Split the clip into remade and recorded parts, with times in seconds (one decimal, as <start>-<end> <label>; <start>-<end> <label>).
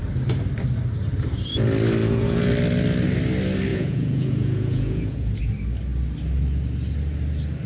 0.0-2.0 recorded; 2.0-2.5 remade; 2.5-3.7 recorded; 3.7-5.4 remade; 5.4-7.7 recorded